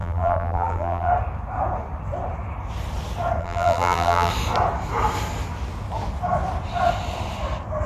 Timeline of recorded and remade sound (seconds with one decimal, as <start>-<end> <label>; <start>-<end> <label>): 0.0-1.1 remade; 1.1-3.4 recorded; 3.4-4.3 remade; 4.3-7.9 recorded